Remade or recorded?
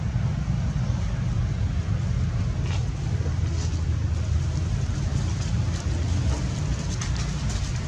recorded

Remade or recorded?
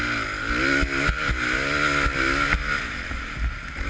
recorded